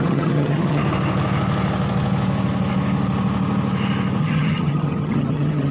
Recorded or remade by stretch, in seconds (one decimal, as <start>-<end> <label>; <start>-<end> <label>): 0.0-0.8 remade; 0.8-4.2 recorded; 4.2-5.7 remade